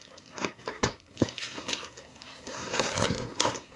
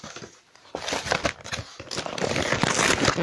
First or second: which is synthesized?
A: first